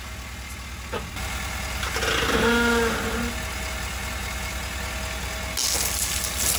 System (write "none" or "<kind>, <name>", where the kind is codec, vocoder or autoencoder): none